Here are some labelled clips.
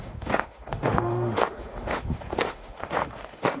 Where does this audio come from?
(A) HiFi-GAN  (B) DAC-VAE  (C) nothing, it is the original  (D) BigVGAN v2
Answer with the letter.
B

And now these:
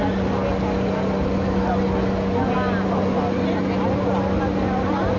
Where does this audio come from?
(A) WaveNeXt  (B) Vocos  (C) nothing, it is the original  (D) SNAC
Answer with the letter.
C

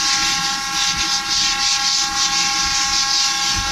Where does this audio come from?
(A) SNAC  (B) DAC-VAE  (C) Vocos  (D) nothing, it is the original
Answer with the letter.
D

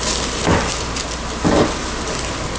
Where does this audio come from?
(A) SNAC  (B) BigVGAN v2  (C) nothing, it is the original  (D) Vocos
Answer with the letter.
C